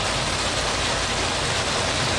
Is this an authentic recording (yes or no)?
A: yes